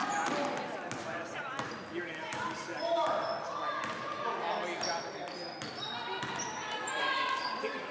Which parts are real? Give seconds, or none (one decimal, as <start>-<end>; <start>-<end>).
0.0-2.0; 2.7-7.0